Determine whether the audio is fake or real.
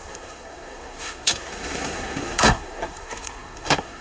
fake